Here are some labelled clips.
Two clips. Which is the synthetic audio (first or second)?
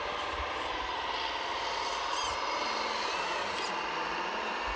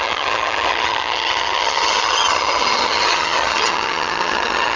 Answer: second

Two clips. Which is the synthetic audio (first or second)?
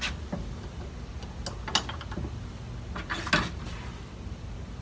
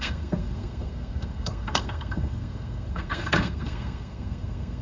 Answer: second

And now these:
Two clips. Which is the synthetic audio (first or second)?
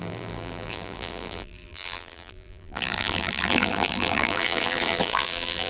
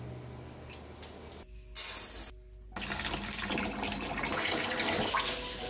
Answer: first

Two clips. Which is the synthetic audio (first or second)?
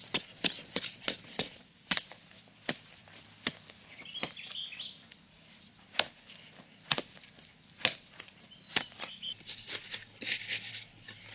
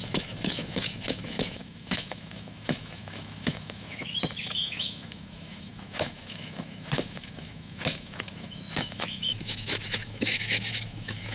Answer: second